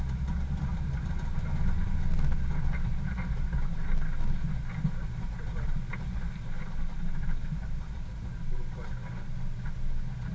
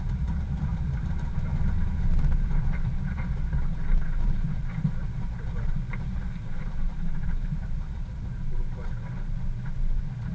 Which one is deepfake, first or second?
second